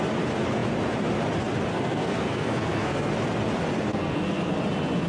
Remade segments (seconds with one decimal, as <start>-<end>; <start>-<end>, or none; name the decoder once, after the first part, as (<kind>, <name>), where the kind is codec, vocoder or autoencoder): 1.7-3.1 (codec, SNAC); 3.9-4.5

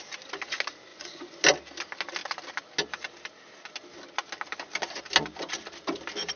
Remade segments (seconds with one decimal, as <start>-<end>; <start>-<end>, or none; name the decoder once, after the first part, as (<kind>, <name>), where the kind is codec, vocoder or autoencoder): 0.9-1.4 (vocoder, Vocos)

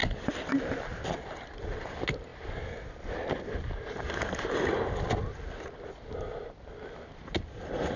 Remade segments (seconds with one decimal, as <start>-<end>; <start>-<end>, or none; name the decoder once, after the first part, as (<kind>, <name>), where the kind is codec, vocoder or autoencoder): none

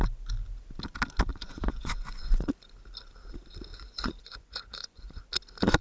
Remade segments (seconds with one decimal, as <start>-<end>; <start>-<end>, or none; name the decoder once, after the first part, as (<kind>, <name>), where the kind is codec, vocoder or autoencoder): 1.3-2.5 (vocoder, Vocos); 3.7-5.2

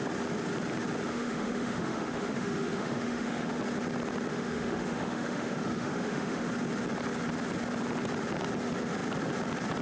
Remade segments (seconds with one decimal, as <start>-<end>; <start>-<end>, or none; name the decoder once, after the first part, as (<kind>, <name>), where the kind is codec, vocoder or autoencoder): 1.1-3.6 (autoencoder, DAC-VAE); 4.3-6.5

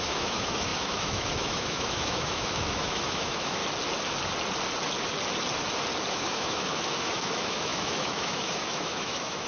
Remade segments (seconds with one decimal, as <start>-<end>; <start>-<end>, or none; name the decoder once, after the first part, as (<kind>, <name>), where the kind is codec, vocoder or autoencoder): 0.0-3.6 (autoencoder, DAC-VAE); 6.1-9.5

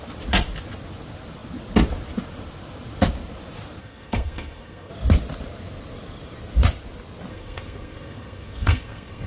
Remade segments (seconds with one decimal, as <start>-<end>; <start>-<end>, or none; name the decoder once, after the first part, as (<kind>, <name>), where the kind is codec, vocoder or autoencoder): 3.8-4.9 (codec, SNAC); 7.3-9.3

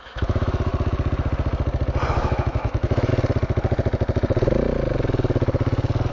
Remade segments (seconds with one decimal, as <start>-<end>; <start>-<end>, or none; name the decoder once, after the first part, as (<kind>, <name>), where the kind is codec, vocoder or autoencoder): 0.0-0.7 (autoencoder, DAC-VAE); 2.1-3.1